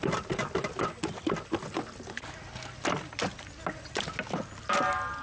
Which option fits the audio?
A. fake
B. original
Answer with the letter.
B